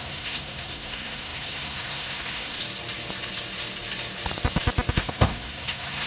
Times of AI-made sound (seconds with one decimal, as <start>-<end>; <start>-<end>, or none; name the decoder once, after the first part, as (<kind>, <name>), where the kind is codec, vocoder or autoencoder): 0.0-2.6 (codec, SNAC); 4.9-6.1